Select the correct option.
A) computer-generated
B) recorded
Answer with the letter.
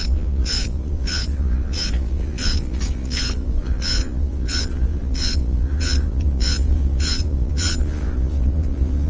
A